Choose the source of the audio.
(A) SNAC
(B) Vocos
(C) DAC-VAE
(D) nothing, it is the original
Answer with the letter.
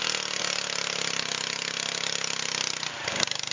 D